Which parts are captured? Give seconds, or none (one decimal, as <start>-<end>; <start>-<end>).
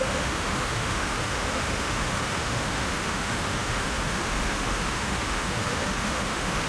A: none